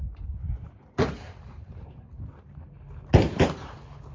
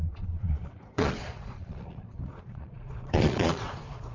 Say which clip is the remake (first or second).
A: second